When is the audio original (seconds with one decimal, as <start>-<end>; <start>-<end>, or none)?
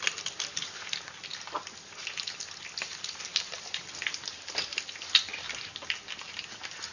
0.0-6.9